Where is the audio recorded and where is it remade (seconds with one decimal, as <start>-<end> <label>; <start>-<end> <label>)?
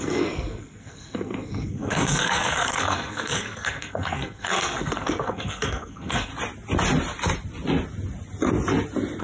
0.0-6.3 remade; 6.3-9.2 recorded